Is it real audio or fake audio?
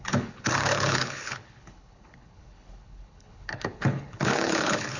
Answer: fake